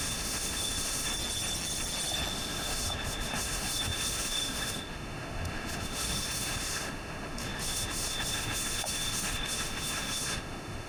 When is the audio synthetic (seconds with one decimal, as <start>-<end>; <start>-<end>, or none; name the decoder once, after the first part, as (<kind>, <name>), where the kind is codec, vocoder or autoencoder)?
0.0-1.1 (autoencoder, DAC-VAE); 2.3-10.9